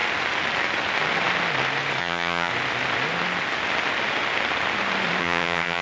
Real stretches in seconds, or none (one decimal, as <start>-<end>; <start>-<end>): 0.0-2.0; 2.5-5.2